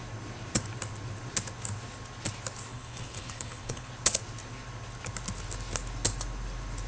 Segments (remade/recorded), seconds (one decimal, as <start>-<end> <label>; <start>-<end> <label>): 0.0-2.7 recorded; 2.7-3.9 remade; 3.9-6.9 recorded